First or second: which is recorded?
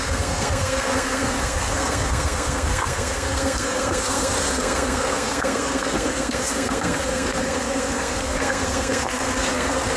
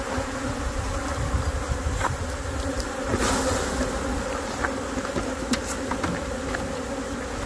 second